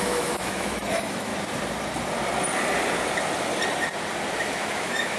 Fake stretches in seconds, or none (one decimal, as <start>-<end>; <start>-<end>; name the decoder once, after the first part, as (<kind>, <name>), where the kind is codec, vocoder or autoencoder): 0.0-1.3 (autoencoder, DAC-VAE); 4.4-5.2